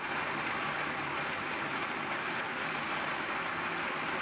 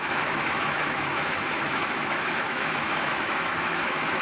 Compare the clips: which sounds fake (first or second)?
second